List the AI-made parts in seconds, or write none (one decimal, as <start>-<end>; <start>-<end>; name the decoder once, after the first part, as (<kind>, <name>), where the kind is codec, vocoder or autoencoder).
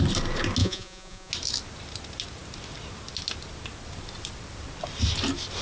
0.6-1.3 (vocoder, Vocos)